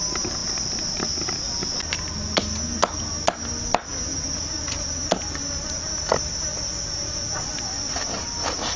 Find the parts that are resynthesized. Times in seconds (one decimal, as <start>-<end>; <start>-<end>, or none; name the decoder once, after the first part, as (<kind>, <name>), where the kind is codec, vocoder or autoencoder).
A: none